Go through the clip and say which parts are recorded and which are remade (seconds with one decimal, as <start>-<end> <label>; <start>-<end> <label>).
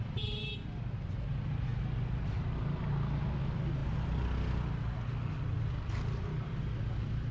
0.0-7.3 recorded